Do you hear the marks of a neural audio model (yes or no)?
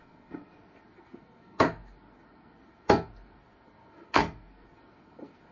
yes